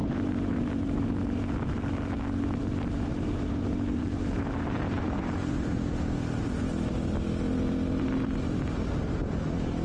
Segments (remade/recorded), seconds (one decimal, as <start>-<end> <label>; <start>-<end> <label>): 0.0-1.1 remade; 1.1-4.0 recorded; 4.0-5.5 remade; 5.5-9.8 recorded